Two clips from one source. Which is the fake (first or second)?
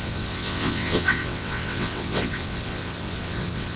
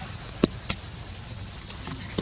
first